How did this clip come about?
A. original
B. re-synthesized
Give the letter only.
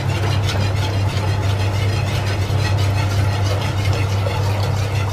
A